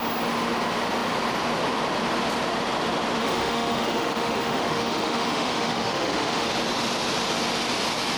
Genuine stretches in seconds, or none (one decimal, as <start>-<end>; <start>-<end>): 0.0-3.2; 6.5-8.2